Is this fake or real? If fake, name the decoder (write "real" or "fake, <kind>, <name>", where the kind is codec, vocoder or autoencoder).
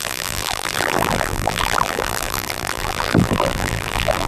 fake, vocoder, BigVGAN v2